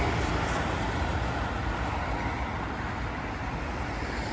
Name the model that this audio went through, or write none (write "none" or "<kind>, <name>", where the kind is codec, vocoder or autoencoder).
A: none